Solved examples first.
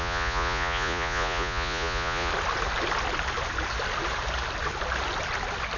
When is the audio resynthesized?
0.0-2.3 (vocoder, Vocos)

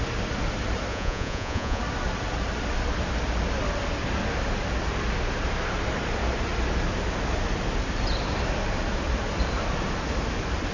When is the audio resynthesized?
0.9-1.8 (vocoder, Vocos)

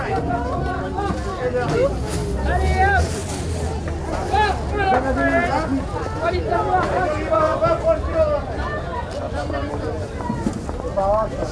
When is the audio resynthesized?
none